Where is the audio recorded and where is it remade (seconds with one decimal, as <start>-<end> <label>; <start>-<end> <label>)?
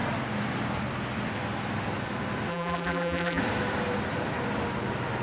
0.0-2.5 recorded; 2.5-3.4 remade; 3.4-5.2 recorded